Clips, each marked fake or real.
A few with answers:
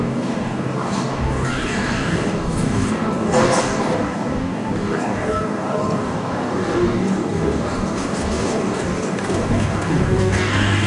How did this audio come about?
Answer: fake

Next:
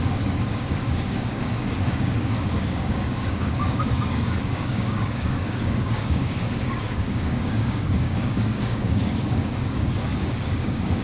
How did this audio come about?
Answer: fake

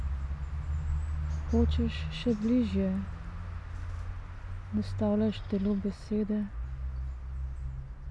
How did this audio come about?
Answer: real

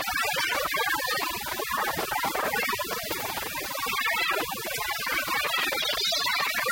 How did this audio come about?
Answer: real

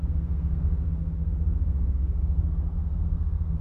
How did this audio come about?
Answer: fake